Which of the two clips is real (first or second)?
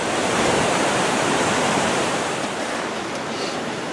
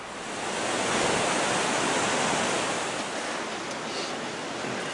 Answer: second